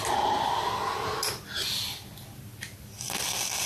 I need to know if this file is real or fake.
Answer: real